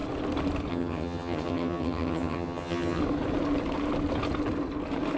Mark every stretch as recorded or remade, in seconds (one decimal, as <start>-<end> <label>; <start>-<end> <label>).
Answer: 0.0-0.7 recorded; 0.7-3.0 remade; 3.0-5.2 recorded